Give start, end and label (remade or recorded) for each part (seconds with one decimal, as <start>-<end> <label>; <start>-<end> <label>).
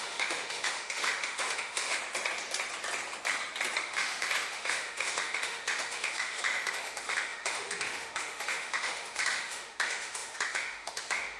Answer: 0.0-2.0 remade; 2.0-3.8 recorded; 3.8-11.4 remade